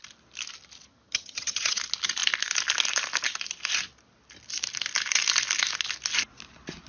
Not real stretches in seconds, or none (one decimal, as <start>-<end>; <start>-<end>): 0.9-1.8